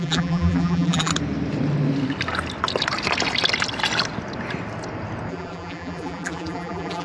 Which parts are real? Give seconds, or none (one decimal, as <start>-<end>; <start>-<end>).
1.1-5.3